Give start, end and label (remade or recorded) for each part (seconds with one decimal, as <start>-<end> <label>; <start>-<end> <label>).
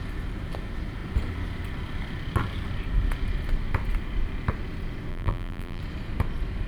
0.0-5.1 recorded; 5.1-5.8 remade; 5.8-6.7 recorded